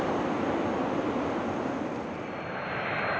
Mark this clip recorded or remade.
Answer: recorded